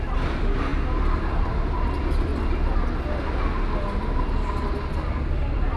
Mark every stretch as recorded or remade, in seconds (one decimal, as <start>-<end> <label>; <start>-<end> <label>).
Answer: 0.0-2.3 remade; 2.3-5.3 recorded; 5.3-5.8 remade